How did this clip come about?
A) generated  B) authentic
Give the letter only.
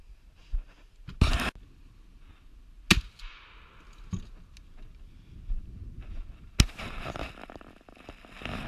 B